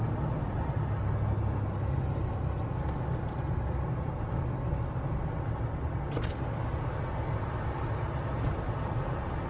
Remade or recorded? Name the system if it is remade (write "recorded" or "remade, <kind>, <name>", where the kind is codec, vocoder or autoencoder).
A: recorded